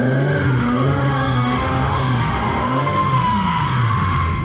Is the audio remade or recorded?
remade